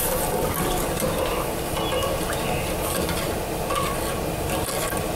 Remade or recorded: recorded